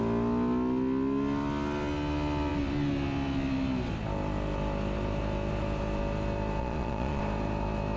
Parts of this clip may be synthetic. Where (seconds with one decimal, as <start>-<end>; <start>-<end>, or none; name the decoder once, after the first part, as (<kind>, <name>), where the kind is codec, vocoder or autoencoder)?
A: 6.6-7.2 (vocoder, Vocos)